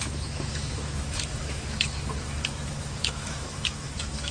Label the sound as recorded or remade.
remade